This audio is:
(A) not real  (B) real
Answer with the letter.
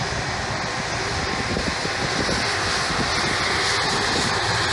B